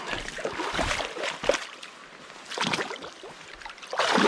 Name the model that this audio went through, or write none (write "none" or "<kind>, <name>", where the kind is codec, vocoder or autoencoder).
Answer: none